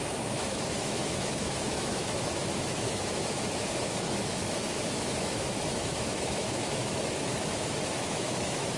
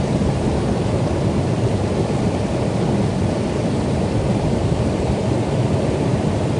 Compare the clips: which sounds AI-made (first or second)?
first